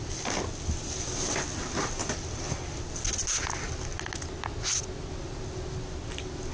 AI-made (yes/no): no